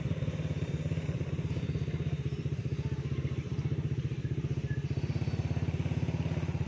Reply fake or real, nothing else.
fake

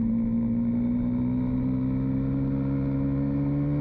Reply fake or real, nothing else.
real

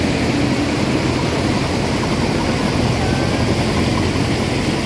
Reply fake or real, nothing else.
real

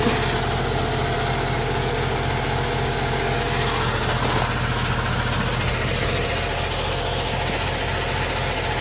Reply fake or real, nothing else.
real